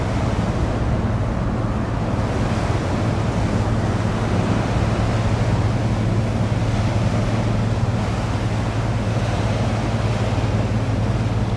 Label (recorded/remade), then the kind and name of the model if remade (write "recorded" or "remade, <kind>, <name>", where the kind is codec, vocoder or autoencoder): recorded